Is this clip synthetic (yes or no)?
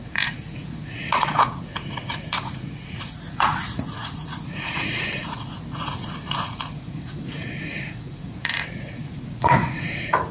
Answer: yes